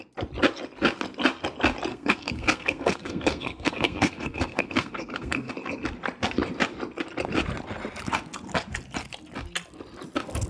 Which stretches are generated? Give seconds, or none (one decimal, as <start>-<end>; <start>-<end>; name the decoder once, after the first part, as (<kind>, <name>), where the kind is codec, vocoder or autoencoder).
1.9-5.5 (codec, SNAC)